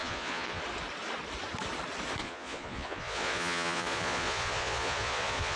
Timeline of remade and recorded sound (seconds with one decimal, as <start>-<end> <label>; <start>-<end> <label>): 0.0-0.6 remade; 0.6-2.2 recorded; 2.2-5.6 remade